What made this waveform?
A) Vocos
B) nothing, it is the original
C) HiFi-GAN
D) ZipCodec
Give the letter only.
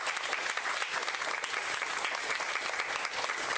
B